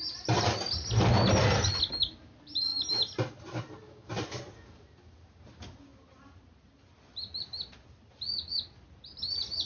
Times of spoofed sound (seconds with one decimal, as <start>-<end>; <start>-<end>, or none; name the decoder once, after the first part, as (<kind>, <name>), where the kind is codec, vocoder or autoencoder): none